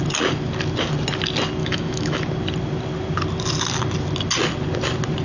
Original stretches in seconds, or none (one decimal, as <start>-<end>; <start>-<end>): 0.0-1.6; 2.2-5.2